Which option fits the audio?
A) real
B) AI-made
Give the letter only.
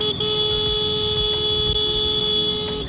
A